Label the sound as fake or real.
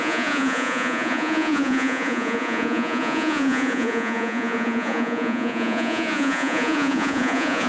fake